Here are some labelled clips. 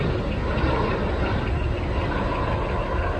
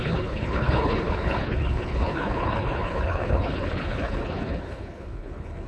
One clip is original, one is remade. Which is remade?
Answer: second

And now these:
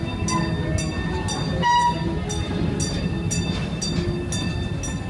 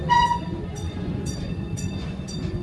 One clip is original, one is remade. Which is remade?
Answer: second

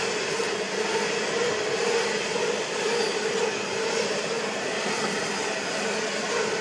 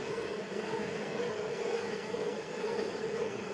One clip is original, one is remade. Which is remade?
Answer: second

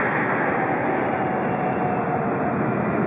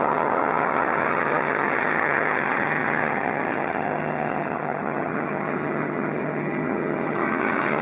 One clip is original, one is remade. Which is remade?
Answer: second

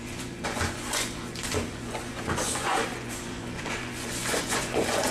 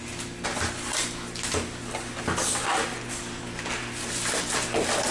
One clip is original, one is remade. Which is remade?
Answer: first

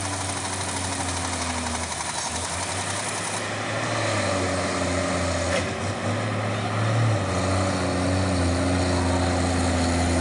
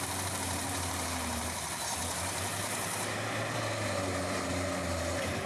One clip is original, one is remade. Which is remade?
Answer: second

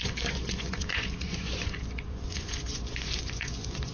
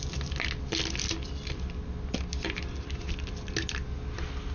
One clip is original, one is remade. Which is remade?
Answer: first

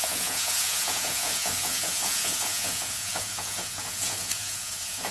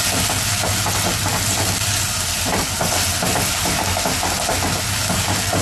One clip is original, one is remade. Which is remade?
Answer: first